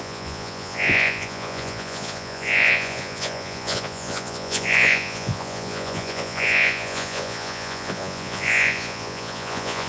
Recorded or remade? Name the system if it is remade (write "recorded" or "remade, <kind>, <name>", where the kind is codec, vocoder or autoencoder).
remade, vocoder, Vocos